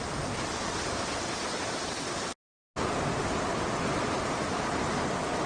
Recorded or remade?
recorded